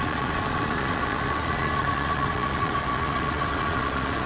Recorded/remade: remade